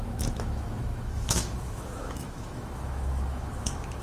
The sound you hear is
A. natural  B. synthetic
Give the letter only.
B